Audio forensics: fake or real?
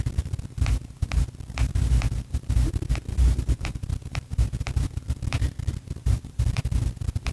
fake